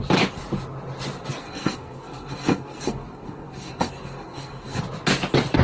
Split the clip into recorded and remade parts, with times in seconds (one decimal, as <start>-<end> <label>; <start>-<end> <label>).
0.0-1.4 recorded; 1.4-4.8 remade; 4.8-5.6 recorded